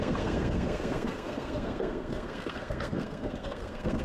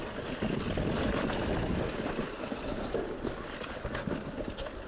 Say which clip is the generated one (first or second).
first